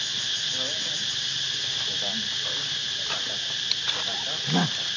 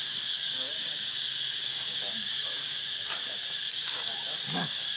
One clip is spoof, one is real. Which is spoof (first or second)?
second